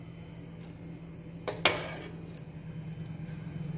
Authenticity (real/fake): real